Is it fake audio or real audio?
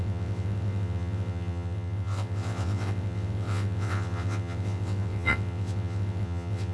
fake